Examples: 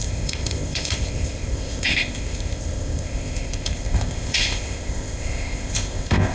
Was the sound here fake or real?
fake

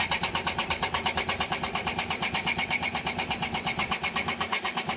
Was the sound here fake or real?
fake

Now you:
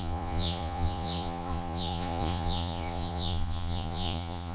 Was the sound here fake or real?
fake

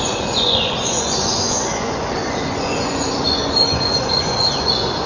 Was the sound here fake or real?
fake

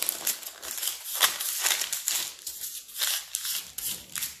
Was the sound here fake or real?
real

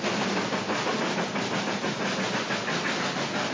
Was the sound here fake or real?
real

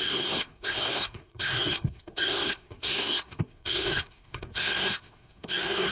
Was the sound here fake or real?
fake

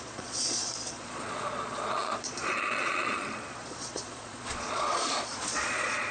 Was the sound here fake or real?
fake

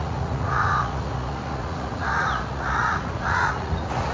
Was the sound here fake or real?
fake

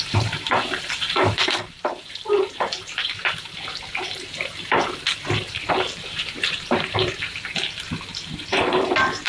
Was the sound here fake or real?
fake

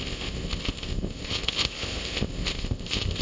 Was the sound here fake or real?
fake